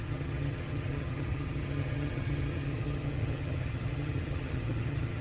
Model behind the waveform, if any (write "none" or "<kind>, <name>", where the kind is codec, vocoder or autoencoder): vocoder, HiFi-GAN